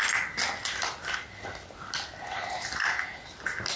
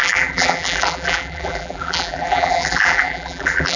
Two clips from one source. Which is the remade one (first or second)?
second